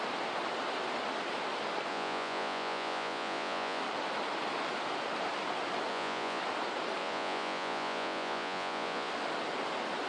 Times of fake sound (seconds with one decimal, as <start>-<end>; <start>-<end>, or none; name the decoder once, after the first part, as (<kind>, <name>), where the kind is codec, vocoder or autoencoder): 1.9-3.8 (vocoder, Vocos); 5.9-6.4; 7.0-9.1